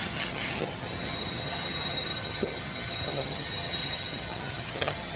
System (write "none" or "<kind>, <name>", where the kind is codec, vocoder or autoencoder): vocoder, HiFi-GAN